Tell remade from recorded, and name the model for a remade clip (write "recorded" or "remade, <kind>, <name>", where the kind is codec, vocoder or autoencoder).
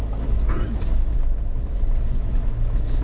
recorded